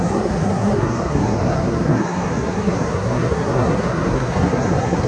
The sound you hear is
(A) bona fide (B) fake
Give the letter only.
B